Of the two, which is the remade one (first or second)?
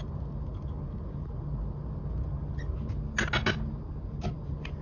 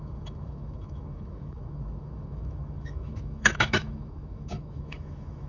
second